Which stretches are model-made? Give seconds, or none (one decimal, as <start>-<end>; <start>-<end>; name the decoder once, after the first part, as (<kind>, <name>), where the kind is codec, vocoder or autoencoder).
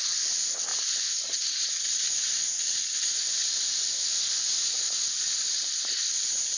0.0-0.7 (vocoder, BigVGAN v2); 4.6-6.6